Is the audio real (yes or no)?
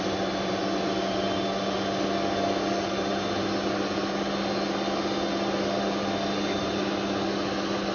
yes